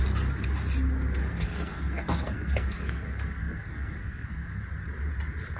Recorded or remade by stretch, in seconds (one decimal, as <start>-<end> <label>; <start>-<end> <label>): 0.0-1.2 recorded; 1.2-4.6 remade; 4.6-5.6 recorded